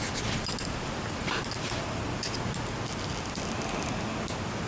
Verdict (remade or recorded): recorded